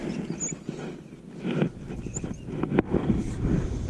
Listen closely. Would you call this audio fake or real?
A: real